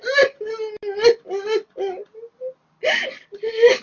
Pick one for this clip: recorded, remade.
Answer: recorded